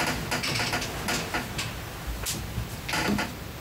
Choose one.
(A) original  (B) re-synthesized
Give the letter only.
A